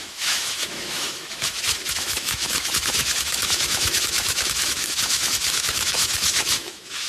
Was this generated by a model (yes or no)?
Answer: yes